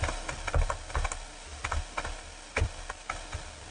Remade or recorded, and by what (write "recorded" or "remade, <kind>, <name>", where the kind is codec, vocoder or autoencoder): recorded